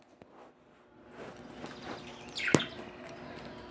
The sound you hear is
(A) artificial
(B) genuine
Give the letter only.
B